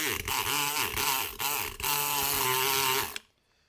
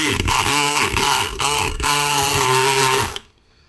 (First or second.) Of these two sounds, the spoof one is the second